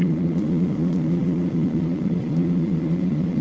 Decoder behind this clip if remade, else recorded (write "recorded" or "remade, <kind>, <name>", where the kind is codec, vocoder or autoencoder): remade, vocoder, Vocos